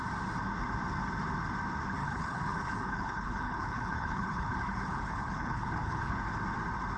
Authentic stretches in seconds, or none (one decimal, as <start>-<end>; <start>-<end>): 0.0-2.0; 6.2-7.0